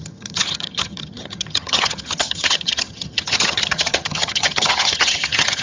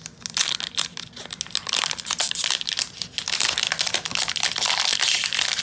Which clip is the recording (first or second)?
second